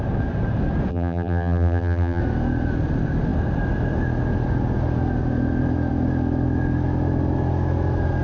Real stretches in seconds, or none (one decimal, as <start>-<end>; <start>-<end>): 0.0-0.9; 2.2-8.2